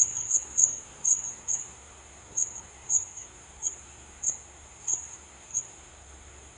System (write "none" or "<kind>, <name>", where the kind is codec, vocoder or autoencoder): codec, SNAC